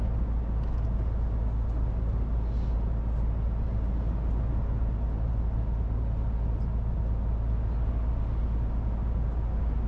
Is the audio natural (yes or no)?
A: yes